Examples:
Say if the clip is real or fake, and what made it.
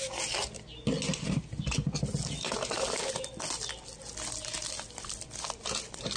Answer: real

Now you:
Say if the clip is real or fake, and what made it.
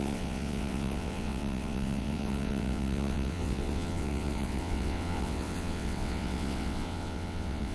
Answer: fake, vocoder, WaveNeXt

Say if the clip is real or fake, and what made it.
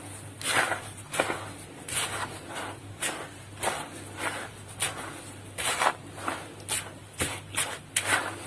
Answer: real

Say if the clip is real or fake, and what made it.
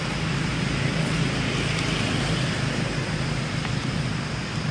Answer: real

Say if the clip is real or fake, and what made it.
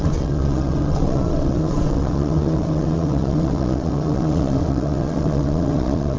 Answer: fake, vocoder, WaveNeXt